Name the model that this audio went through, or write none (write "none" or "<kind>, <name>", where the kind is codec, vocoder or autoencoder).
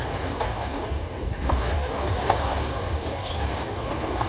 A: codec, DAC